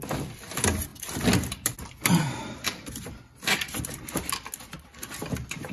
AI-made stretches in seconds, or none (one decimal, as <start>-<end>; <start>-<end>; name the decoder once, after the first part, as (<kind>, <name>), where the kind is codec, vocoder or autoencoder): 0.9-4.3 (vocoder, BigVGAN v2)